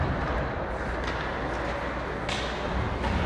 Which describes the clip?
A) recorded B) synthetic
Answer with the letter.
A